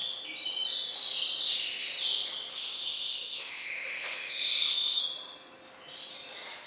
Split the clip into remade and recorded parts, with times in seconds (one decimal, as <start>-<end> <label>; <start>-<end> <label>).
0.0-2.5 recorded; 2.5-5.0 remade; 5.0-6.7 recorded